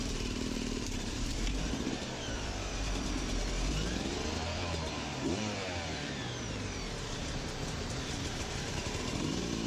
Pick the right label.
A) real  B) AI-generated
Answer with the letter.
B